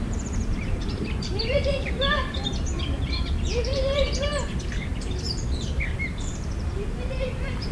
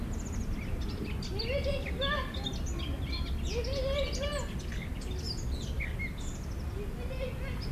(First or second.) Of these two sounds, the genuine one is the second